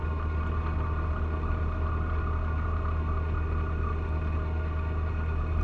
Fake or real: real